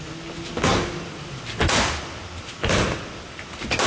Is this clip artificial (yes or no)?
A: no